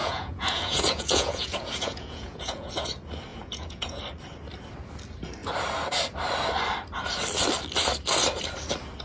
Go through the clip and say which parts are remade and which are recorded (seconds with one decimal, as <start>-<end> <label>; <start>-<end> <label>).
0.0-2.7 remade; 2.7-3.3 recorded; 3.3-4.0 remade; 4.0-9.0 recorded

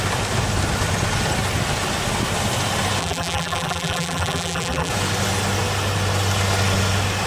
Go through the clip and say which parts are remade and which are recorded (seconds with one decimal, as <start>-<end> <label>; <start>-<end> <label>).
0.0-3.0 recorded; 3.0-4.9 remade; 4.9-7.3 recorded

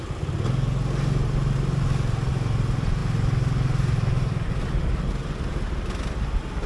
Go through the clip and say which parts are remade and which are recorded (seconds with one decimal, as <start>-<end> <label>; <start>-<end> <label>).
0.0-6.7 recorded

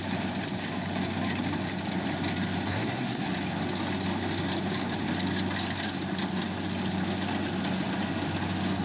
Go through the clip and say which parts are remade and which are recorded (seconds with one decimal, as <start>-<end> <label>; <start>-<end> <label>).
0.0-2.7 recorded; 2.7-3.3 remade; 3.3-8.8 recorded

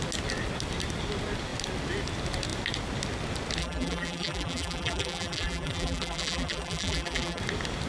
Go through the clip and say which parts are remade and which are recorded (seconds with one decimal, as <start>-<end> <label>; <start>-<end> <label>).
0.0-3.6 recorded; 3.6-7.4 remade; 7.4-7.9 recorded

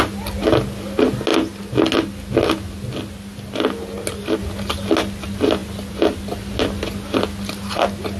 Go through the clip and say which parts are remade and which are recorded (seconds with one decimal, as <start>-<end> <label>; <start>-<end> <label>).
0.0-8.2 recorded

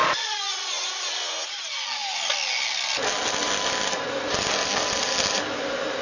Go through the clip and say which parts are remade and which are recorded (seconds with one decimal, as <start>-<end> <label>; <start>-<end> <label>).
0.0-1.3 remade; 1.3-6.0 recorded

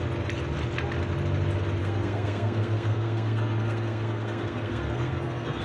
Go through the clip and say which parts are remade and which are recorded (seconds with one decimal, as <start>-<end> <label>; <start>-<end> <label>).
0.0-1.8 recorded; 1.8-5.6 remade